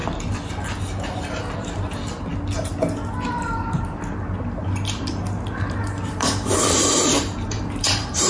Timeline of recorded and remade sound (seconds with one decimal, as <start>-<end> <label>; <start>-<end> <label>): 0.0-4.6 recorded; 4.6-8.3 remade